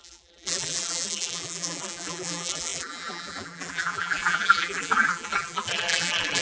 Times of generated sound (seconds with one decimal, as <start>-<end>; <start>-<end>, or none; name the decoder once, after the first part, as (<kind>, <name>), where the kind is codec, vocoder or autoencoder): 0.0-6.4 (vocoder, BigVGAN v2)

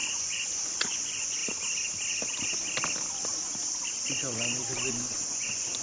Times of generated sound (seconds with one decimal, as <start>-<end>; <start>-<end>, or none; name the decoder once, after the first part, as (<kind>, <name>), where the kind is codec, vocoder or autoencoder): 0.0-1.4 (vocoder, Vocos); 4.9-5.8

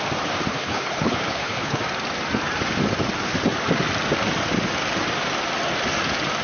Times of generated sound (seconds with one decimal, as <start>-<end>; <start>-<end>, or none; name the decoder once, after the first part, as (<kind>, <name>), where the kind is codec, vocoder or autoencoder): 0.5-1.8 (codec, HILCodec)

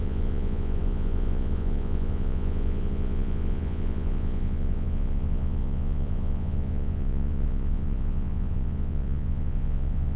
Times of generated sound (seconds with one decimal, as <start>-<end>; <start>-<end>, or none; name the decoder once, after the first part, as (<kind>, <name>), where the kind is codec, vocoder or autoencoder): 0.0-10.2 (vocoder, Vocos)

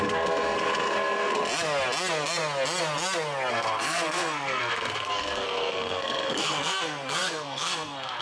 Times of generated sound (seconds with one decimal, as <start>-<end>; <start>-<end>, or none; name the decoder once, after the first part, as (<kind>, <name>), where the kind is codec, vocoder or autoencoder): 0.0-1.4 (codec, SNAC); 3.5-8.2